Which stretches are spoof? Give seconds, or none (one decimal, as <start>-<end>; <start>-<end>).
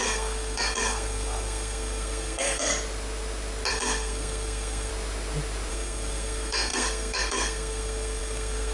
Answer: 0.0-2.7; 3.7-4.9; 5.7-8.7